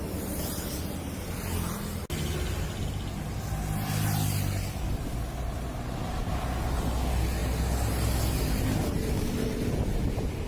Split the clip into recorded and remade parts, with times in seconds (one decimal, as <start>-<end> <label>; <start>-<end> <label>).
0.0-10.5 recorded